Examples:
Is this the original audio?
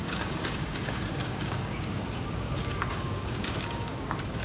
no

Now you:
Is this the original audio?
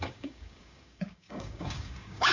no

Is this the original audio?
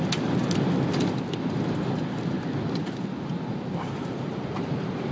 yes